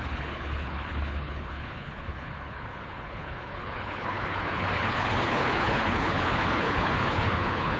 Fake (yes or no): yes